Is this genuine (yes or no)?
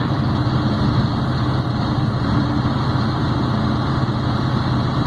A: no